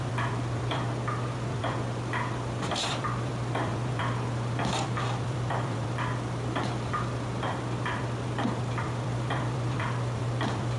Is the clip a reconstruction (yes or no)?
yes